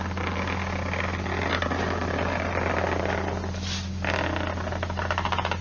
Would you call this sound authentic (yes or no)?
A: yes